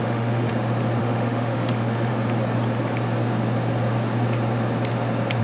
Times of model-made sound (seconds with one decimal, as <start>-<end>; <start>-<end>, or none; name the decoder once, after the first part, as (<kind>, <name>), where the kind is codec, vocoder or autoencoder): 0.0-0.5 (autoencoder, DAC-VAE); 1.0-2.1

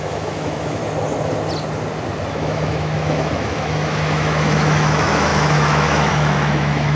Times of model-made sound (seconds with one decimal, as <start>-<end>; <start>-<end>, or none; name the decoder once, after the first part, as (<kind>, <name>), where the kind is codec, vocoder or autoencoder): 0.0-0.8 (autoencoder, DAC-VAE); 2.3-7.0

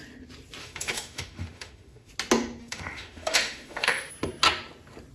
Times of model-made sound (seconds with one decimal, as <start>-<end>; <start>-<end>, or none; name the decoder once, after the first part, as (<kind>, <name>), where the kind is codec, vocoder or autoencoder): 0.6-2.1 (autoencoder, DAC-VAE); 2.6-4.1